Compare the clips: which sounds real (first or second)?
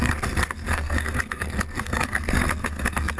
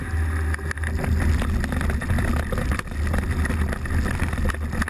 second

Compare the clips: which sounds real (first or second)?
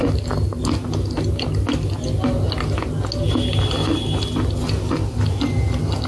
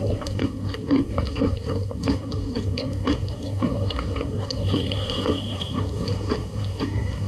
first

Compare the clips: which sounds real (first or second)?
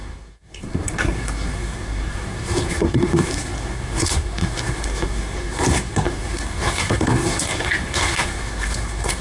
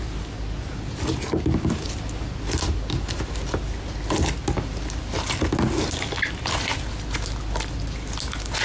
second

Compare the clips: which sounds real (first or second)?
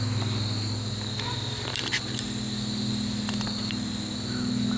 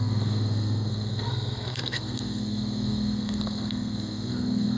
first